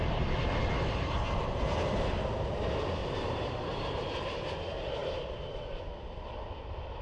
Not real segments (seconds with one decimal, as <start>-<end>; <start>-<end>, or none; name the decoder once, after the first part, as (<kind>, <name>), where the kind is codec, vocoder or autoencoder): 3.0-4.2 (vocoder, BigVGAN v2); 5.0-5.6